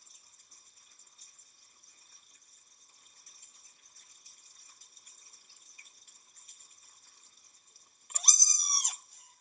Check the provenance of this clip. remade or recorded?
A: remade